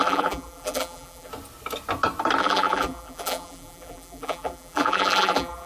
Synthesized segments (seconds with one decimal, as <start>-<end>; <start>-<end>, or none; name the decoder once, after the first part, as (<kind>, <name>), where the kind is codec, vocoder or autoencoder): 0.0-1.3 (vocoder, BigVGAN v2); 2.4-5.7